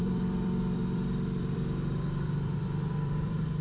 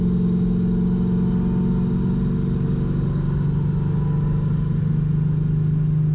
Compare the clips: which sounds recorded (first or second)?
second